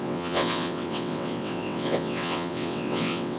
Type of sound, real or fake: fake